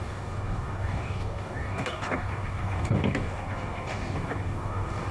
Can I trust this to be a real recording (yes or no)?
no